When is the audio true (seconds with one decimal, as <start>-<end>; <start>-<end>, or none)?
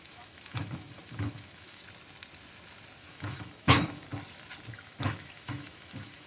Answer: 1.8-3.0; 4.1-4.7